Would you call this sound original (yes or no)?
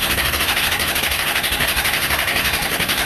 no